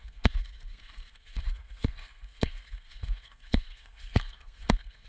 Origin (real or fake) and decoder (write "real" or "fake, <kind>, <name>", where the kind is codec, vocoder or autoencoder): fake, codec, SNAC